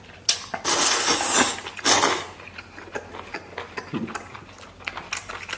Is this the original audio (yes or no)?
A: yes